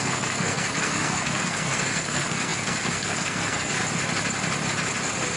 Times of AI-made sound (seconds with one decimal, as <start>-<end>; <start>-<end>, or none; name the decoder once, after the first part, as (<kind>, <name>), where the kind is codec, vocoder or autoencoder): 0.0-3.8 (codec, SNAC)